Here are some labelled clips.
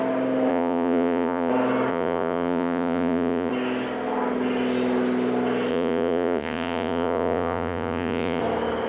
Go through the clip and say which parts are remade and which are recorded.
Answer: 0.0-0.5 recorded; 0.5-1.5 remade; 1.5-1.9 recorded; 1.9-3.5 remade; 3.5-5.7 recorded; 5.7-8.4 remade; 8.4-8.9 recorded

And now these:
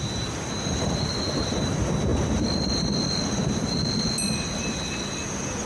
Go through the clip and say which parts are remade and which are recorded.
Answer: 0.0-5.7 recorded

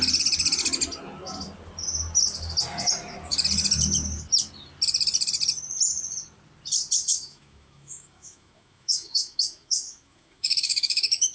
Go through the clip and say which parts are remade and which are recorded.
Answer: 0.0-7.0 recorded; 7.0-11.3 remade

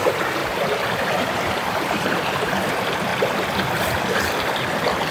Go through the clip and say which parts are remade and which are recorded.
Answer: 0.0-3.1 remade; 3.1-4.4 recorded; 4.4-5.1 remade